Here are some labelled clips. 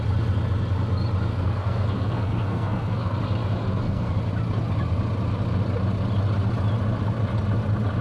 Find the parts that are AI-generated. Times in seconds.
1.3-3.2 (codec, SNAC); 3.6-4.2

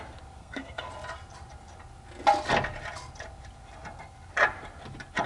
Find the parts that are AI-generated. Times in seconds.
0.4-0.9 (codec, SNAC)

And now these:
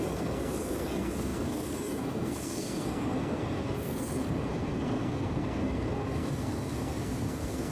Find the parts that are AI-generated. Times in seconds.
0.0-7.7 (codec, SNAC)

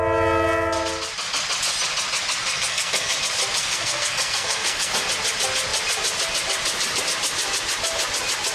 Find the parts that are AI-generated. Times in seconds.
2.4-3.2 (codec, SNAC); 3.6-4.9

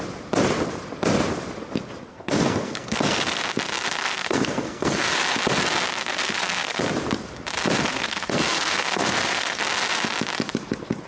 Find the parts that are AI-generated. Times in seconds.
2.1-3.4 (codec, SNAC); 4.0-5.1; 6.2-6.8; 7.9-9.6

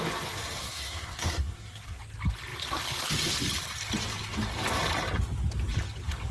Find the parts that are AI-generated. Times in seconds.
0.6-2.0 (codec, SNAC)

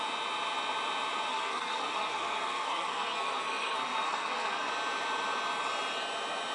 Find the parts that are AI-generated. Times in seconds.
1.3-4.7 (codec, SNAC)